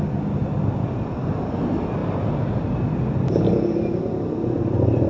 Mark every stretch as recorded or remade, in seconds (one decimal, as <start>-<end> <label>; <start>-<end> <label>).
0.0-5.1 recorded